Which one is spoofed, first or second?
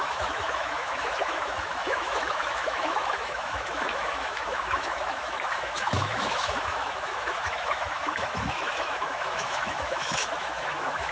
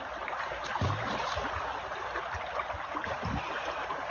first